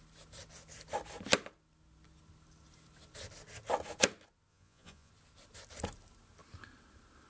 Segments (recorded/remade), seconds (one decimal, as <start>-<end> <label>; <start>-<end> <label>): 0.0-4.5 recorded; 4.5-5.1 remade; 5.1-7.3 recorded